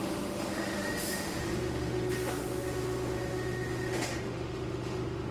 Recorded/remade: remade